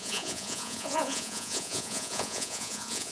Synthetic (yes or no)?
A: yes